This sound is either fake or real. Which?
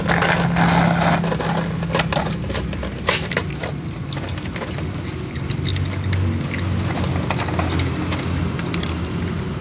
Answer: real